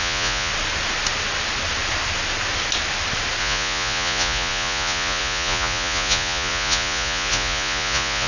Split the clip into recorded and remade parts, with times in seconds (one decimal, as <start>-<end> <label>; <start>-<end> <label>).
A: 0.0-0.5 remade; 0.5-3.4 recorded; 3.4-8.3 remade